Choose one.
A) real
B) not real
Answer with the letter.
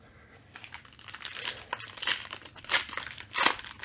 A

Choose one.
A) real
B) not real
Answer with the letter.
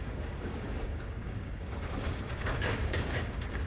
B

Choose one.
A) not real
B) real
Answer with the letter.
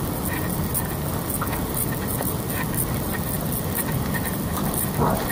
B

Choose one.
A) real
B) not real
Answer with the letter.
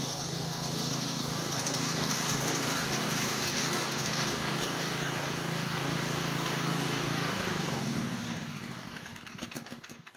B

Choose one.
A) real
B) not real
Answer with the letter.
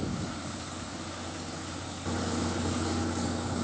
B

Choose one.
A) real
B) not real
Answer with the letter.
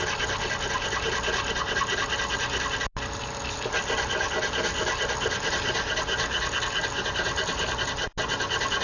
A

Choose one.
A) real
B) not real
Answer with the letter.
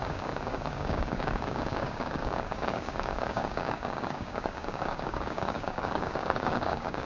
B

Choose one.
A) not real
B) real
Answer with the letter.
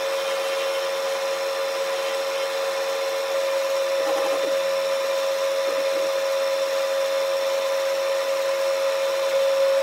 B